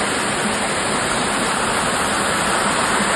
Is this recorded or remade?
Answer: recorded